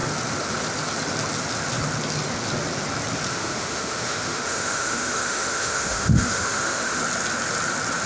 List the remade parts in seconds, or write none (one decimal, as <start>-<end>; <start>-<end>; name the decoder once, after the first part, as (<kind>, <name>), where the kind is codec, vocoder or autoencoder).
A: 3.3-7.0 (autoencoder, DAC-VAE)